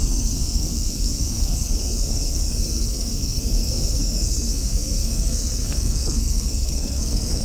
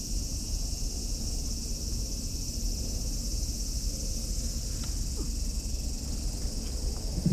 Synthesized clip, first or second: first